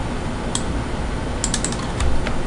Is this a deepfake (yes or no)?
no